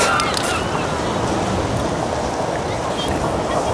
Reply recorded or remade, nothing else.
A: recorded